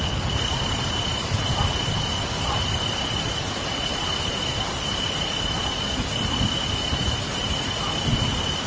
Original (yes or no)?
yes